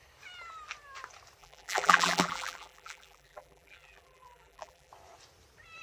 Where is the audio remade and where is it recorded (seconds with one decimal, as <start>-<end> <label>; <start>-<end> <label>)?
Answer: 0.0-1.4 recorded; 1.4-4.9 remade; 4.9-5.8 recorded

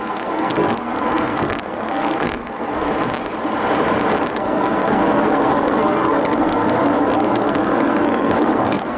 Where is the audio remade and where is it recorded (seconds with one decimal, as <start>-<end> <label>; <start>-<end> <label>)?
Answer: 0.0-2.9 remade; 2.9-4.3 recorded; 4.3-9.0 remade

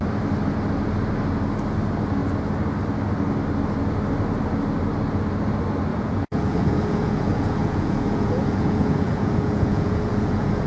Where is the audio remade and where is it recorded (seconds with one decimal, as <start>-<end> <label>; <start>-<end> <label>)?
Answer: 0.0-5.9 recorded; 5.9-10.7 remade

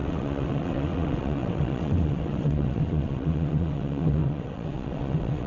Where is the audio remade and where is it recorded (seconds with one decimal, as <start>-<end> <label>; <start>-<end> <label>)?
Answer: 0.0-5.5 remade

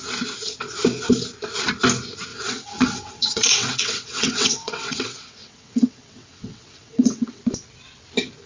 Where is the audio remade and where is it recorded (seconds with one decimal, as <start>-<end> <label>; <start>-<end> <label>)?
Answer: 0.0-2.3 recorded; 2.3-7.4 remade; 7.4-8.5 recorded

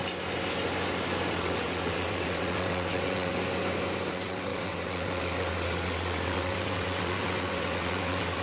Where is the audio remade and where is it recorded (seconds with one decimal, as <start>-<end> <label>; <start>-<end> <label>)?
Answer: 0.0-1.3 recorded; 1.3-3.3 remade; 3.3-4.1 recorded; 4.1-8.4 remade